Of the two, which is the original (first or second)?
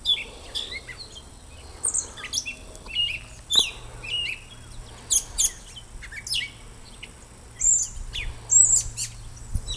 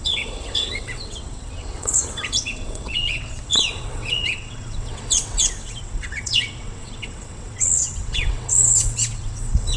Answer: first